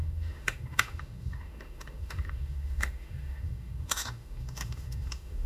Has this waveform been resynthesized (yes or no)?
yes